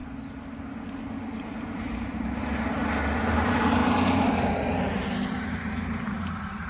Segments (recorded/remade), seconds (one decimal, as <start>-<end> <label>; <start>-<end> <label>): 0.0-3.3 recorded; 3.3-3.8 remade; 3.8-4.4 recorded; 4.4-6.7 remade